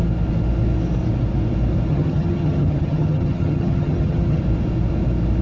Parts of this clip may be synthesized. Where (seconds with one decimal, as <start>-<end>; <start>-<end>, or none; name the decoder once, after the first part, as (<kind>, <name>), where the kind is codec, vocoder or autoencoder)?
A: 1.9-4.4 (vocoder, HiFi-GAN)